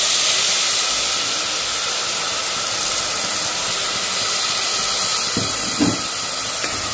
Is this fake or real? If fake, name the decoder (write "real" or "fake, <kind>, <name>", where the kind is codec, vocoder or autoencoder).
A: real